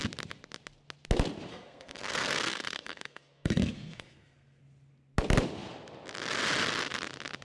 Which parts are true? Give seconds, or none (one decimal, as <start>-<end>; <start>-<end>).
0.0-1.5; 4.6-7.4